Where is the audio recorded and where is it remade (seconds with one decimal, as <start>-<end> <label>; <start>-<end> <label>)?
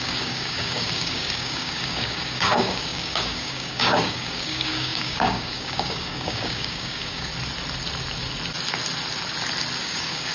0.0-7.3 remade; 7.3-9.8 recorded; 9.8-10.3 remade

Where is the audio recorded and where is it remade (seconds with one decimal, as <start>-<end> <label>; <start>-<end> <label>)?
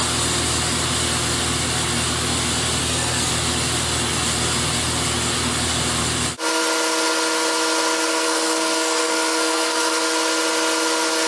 0.0-2.8 recorded; 2.8-3.3 remade; 3.3-8.1 recorded; 8.1-10.0 remade; 10.0-11.3 recorded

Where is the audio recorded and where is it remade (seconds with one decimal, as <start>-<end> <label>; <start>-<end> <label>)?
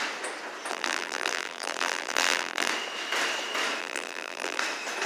0.0-0.7 recorded; 0.7-2.7 remade; 2.7-3.8 recorded; 3.8-4.6 remade; 4.6-5.1 recorded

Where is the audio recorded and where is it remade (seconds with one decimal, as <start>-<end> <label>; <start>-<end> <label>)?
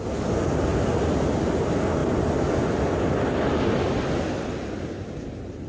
0.0-5.7 recorded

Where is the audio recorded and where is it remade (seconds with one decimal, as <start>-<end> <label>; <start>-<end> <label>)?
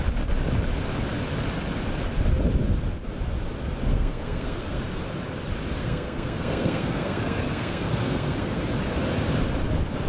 0.0-3.9 recorded; 3.9-4.8 remade; 4.8-5.8 recorded; 5.8-8.6 remade; 8.6-10.1 recorded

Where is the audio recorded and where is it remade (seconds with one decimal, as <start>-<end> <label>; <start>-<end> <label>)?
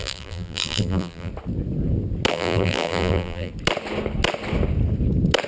0.0-1.3 remade; 1.3-2.3 recorded; 2.3-3.5 remade; 3.5-5.5 recorded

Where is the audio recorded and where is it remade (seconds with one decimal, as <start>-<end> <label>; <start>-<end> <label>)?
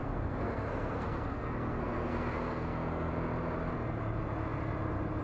0.0-3.1 remade; 3.1-5.2 recorded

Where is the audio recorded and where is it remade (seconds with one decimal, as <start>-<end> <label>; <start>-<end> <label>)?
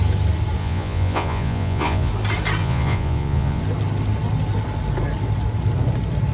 0.0-0.6 recorded; 0.6-2.1 remade; 2.1-2.6 recorded; 2.6-3.6 remade; 3.6-6.3 recorded